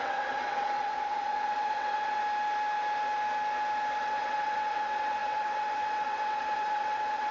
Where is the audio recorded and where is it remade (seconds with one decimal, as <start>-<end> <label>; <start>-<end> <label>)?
0.0-2.2 remade; 2.2-4.0 recorded; 4.0-7.3 remade